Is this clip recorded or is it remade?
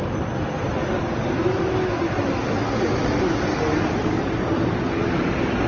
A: recorded